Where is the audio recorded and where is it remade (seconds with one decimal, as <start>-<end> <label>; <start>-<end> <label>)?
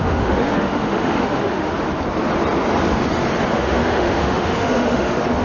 0.0-1.7 remade; 1.7-3.5 recorded; 3.5-5.4 remade